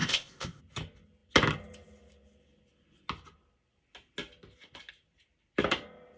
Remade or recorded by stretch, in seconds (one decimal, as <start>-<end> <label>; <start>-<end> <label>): 0.0-0.6 remade; 0.6-6.2 recorded